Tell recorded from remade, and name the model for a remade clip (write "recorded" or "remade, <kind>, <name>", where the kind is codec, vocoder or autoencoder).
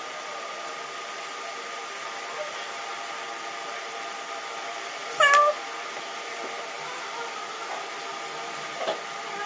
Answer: recorded